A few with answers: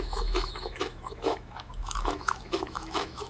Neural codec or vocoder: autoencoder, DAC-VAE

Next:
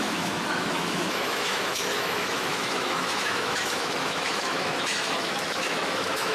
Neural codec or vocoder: autoencoder, DAC-VAE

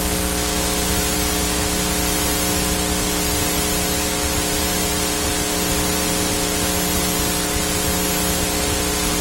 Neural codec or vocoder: none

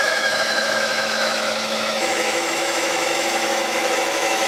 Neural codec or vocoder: autoencoder, DAC-VAE